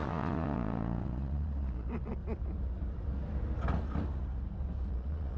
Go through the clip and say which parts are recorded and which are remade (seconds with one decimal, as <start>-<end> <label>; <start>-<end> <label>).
0.0-2.2 remade; 2.2-4.9 recorded; 4.9-5.4 remade